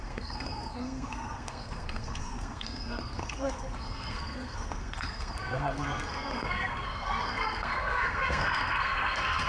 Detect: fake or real fake